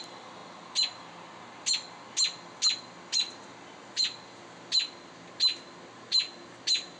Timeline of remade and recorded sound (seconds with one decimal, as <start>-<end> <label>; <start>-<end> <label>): 0.0-7.0 recorded